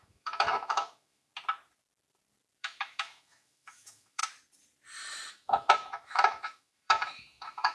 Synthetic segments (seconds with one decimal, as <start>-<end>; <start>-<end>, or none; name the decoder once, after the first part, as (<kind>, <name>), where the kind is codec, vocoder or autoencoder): 0.0-1.3 (autoencoder, DAC-VAE); 2.6-4.2; 5.3-7.7